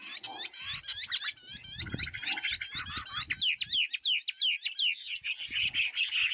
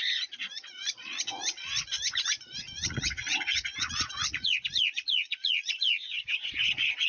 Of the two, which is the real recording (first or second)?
first